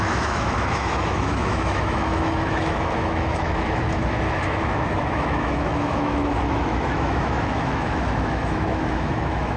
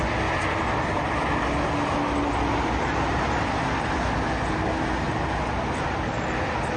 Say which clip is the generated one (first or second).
first